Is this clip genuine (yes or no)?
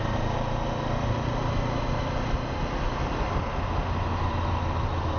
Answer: yes